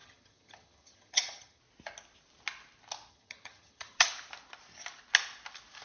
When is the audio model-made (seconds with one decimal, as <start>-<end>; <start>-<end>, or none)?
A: 0.0-1.6; 3.1-4.1